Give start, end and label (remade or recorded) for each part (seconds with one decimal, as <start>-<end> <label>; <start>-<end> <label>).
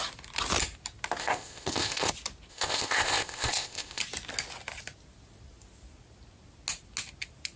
0.0-1.2 recorded; 1.2-2.1 remade; 2.1-2.5 recorded; 2.5-4.0 remade; 4.0-7.6 recorded